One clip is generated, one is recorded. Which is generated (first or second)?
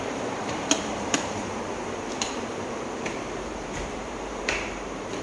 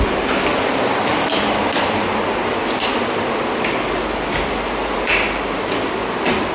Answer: first